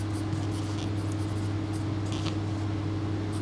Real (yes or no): yes